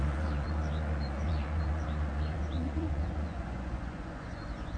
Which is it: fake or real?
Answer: fake